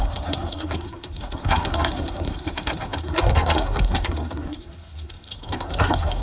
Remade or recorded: remade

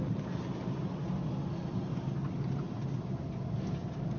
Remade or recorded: recorded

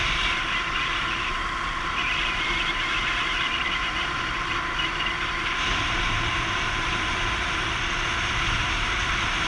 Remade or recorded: remade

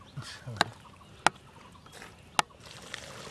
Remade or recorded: recorded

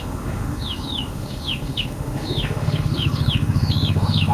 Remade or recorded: remade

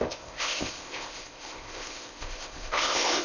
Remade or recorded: remade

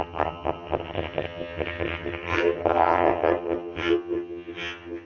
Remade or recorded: remade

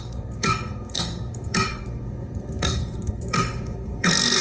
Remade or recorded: remade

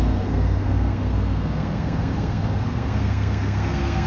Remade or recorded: remade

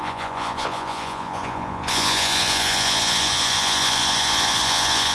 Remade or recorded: remade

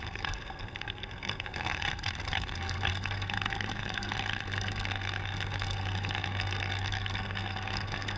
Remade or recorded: remade